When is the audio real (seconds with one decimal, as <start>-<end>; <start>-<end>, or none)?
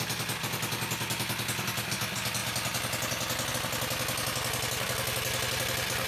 0.0-6.1